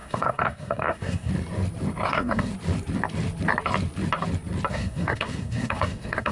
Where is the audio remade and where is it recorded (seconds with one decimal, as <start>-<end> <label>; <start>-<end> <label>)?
0.0-1.3 remade; 1.3-2.1 recorded; 2.1-2.5 remade; 2.5-4.7 recorded; 4.7-6.3 remade